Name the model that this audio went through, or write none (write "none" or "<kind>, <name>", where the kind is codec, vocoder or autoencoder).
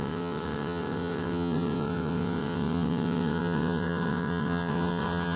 vocoder, WaveNeXt